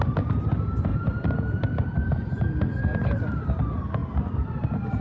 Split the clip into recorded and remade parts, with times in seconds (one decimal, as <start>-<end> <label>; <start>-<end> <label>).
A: 0.0-0.9 recorded; 0.9-3.4 remade; 3.4-4.0 recorded; 4.0-4.6 remade; 4.6-5.0 recorded